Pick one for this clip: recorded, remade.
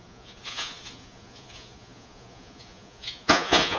remade